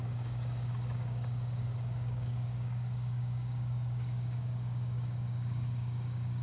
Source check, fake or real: fake